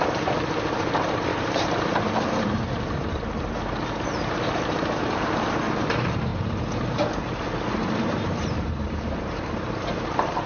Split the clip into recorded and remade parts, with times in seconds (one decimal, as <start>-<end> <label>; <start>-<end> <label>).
0.0-10.5 remade